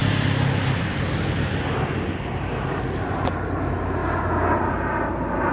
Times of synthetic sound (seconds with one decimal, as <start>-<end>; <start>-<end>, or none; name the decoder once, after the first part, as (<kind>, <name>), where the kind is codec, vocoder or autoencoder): none